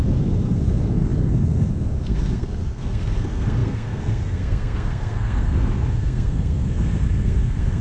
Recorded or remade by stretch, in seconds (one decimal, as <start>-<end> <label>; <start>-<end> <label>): 0.0-7.8 remade